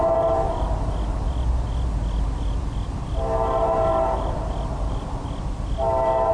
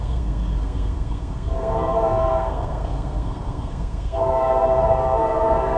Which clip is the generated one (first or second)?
second